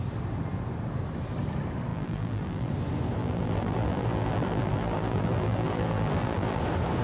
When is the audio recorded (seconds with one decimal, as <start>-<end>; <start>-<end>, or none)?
0.0-1.9; 2.7-3.2; 6.6-7.0

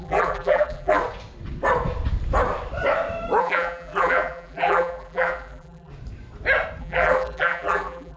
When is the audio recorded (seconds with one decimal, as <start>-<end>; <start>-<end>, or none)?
1.0-3.4; 5.9-6.8

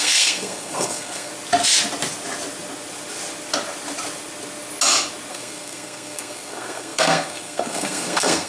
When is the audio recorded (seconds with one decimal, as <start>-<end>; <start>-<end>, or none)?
1.3-5.3

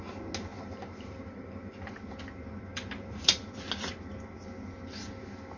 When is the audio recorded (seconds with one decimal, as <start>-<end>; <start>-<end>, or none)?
0.0-0.5; 1.9-2.7; 3.4-5.6

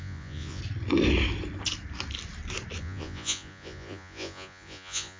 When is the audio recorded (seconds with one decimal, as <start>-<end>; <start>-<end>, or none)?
0.6-2.8

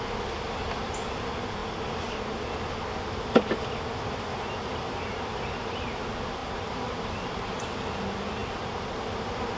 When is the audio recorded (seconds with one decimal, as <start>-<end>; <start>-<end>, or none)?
0.0-6.4; 7.6-8.4; 9.0-9.6

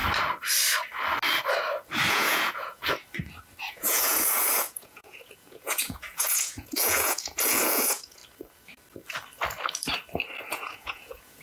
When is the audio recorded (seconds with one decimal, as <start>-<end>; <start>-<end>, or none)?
0.0-2.1; 2.8-3.7; 8.2-10.5